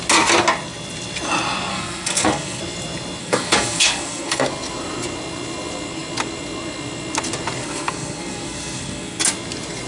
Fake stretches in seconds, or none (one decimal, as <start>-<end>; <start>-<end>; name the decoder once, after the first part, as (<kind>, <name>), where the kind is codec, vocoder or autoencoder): 1.7-2.6 (codec, SNAC); 3.2-4.5; 7.6-9.2